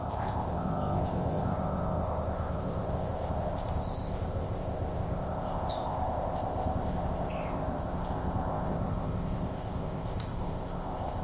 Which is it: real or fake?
fake